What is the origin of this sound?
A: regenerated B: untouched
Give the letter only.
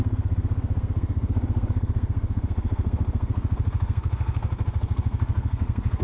A